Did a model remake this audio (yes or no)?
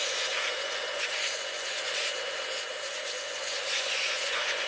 yes